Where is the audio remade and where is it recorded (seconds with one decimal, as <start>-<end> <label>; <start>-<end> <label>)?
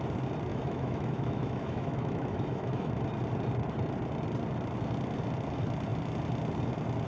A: 0.0-0.5 recorded; 0.5-3.0 remade; 3.0-7.1 recorded